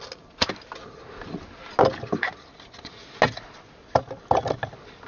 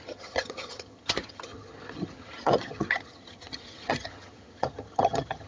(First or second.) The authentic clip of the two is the first